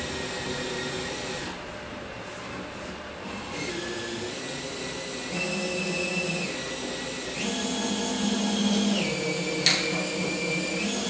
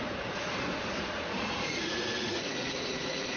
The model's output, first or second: second